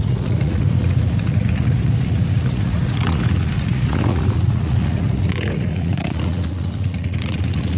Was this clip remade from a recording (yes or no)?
yes